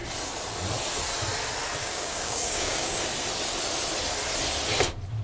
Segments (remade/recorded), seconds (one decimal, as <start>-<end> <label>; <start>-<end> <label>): 0.0-1.8 recorded; 1.8-2.9 remade; 2.9-5.2 recorded